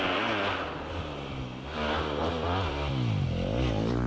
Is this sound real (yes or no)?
yes